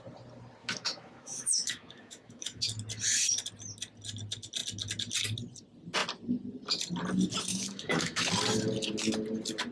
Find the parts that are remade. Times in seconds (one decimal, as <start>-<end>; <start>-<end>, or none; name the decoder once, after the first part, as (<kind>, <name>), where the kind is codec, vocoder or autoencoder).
0.6-2.6 (autoencoder, DAC-VAE); 7.5-8.3